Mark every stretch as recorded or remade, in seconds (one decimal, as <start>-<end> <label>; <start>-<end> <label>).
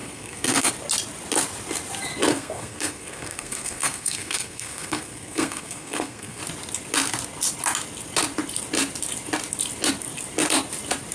0.0-0.7 remade; 0.7-2.3 recorded; 2.3-6.4 remade; 6.4-11.1 recorded